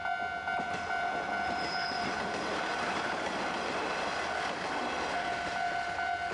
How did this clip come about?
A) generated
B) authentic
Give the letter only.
B